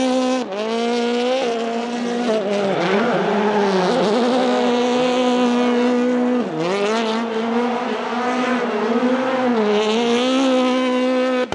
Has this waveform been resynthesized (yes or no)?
no